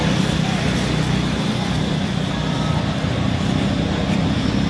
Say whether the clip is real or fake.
real